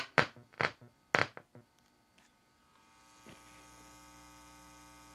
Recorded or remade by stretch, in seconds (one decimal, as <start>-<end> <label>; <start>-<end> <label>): 0.0-5.1 recorded